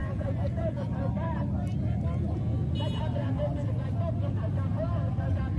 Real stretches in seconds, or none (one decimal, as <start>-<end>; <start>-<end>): 1.1-5.6